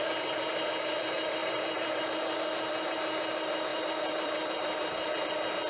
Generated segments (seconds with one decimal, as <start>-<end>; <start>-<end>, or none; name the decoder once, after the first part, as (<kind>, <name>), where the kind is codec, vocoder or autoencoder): 1.4-2.0 (vocoder, BigVGAN v2); 3.7-5.2